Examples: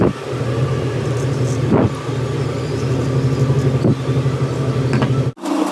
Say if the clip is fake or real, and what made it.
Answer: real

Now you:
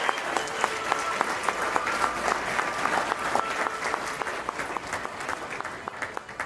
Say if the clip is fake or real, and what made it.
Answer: real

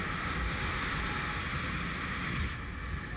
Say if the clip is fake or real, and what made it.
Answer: real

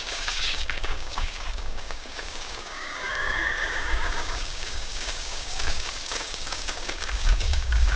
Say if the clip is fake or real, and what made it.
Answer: fake, codec, DAC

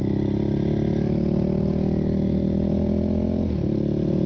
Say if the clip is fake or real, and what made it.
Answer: real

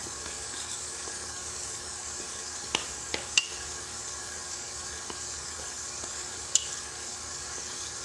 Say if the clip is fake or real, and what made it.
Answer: fake, codec, DAC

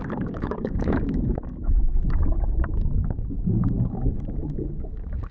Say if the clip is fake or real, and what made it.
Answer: fake, codec, DAC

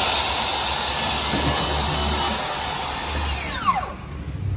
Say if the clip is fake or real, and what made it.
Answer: real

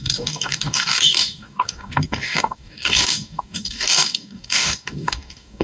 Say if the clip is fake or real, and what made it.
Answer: fake, codec, DAC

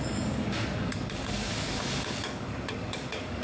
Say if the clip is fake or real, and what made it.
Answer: fake, codec, DAC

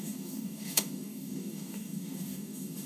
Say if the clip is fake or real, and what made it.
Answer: fake, codec, DAC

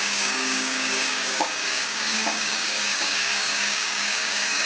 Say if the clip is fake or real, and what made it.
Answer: fake, codec, DAC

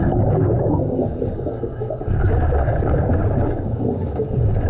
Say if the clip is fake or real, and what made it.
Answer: fake, codec, DAC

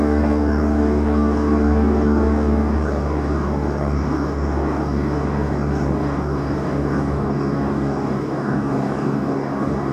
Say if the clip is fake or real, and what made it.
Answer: fake, codec, DAC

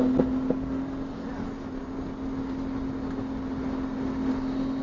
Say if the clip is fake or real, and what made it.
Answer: real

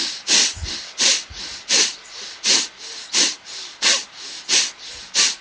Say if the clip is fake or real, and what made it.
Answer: real